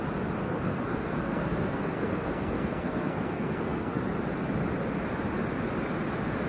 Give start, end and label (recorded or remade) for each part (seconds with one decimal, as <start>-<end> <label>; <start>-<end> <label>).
0.0-0.4 recorded; 0.4-4.0 remade; 4.0-6.5 recorded